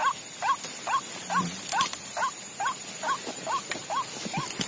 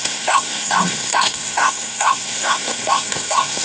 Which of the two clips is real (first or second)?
first